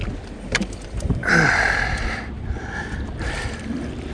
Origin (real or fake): fake